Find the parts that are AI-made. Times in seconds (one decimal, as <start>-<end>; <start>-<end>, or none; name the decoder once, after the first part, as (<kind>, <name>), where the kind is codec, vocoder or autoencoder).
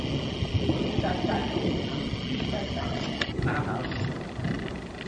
none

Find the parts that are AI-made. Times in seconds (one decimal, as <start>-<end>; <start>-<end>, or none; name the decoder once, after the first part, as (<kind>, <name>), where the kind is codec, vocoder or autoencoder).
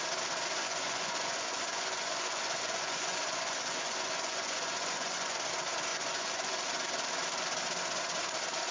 0.6-5.5 (vocoder, Vocos); 5.9-6.6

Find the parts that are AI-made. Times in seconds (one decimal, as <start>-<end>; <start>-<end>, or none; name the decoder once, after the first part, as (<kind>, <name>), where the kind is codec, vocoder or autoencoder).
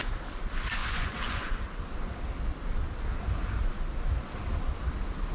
0.8-1.6 (vocoder, Vocos)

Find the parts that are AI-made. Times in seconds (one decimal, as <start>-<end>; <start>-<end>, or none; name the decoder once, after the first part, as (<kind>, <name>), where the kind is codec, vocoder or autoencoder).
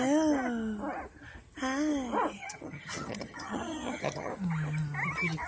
2.4-4.3 (vocoder, HiFi-GAN)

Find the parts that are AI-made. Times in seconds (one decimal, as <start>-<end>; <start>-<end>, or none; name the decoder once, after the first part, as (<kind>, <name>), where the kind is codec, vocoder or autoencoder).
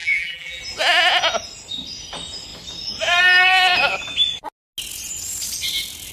0.0-0.6 (vocoder, BigVGAN v2)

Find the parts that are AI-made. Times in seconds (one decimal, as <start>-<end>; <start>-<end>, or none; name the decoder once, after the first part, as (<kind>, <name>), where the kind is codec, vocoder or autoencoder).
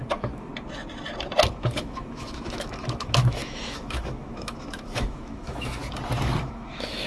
0.0-0.5 (autoencoder, DAC-VAE); 1.6-5.8; 6.4-7.1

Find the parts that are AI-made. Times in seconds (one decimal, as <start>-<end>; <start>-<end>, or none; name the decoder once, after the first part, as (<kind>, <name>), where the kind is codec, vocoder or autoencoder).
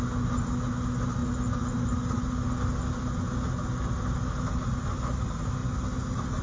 none